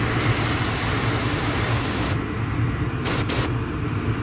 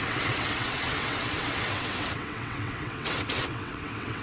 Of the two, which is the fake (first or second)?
second